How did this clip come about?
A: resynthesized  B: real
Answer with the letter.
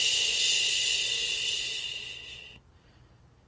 B